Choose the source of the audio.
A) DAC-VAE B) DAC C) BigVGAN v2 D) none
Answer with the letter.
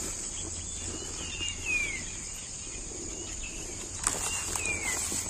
D